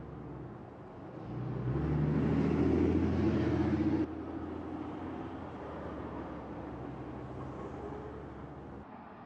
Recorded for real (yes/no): yes